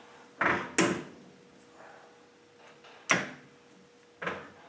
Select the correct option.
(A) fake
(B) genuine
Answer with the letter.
B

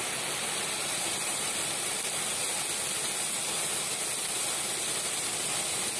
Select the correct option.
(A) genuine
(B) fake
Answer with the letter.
A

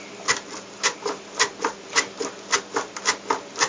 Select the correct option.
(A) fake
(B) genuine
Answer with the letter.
B